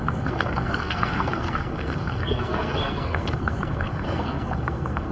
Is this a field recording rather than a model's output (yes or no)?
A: no